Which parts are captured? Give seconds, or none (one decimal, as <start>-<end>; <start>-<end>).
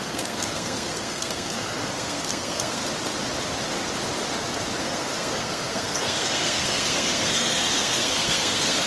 2.8-4.8